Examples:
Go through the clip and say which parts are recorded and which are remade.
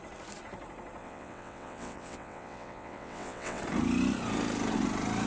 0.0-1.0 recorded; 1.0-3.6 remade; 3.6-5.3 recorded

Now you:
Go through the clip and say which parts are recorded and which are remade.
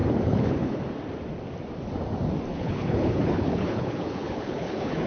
0.0-0.8 remade; 0.8-2.5 recorded; 2.5-5.1 remade